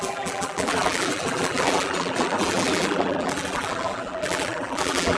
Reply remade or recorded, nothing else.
remade